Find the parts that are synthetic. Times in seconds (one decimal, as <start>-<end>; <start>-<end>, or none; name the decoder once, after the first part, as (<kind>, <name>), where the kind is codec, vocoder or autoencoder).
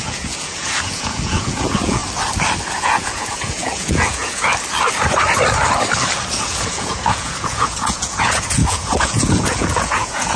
0.0-2.0 (vocoder, Vocos); 2.8-4.5; 6.4-10.4